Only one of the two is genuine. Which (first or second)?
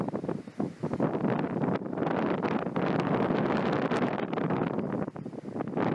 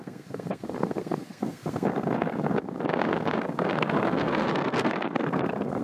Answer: first